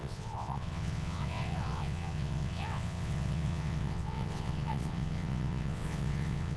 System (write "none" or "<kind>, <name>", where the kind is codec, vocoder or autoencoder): vocoder, WaveNeXt